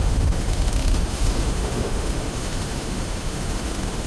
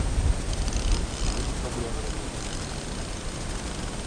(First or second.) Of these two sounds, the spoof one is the first